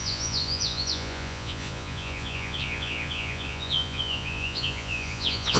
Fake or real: fake